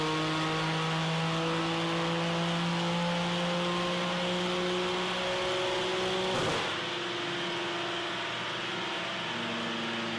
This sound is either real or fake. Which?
real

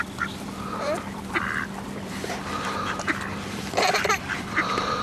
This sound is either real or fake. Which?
fake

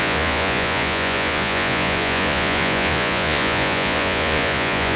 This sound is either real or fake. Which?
fake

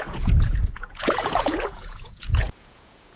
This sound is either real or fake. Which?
fake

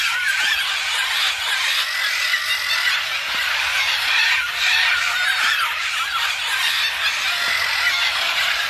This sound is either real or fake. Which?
real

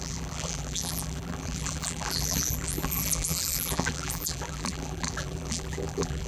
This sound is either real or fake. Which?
fake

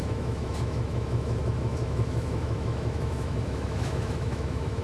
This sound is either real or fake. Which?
fake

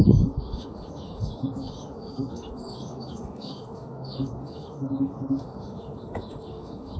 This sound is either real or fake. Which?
fake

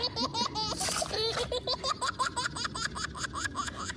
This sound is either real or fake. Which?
real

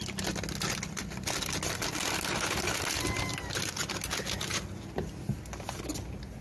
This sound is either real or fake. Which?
real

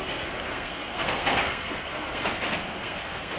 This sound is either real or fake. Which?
fake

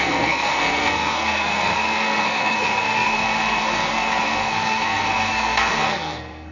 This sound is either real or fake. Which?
fake